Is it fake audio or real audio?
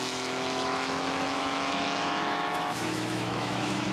fake